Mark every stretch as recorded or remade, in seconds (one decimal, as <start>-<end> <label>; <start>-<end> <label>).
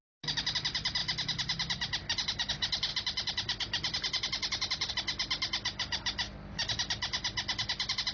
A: 0.0-1.0 recorded; 1.0-2.5 remade; 2.5-2.9 recorded; 2.9-4.9 remade; 4.9-8.1 recorded